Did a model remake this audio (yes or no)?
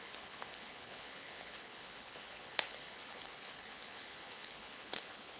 yes